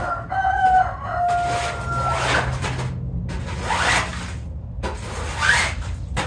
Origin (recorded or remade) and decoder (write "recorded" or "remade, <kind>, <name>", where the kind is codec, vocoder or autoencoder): recorded